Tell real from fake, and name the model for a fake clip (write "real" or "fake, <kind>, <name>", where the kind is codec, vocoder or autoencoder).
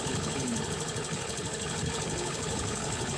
fake, codec, HILCodec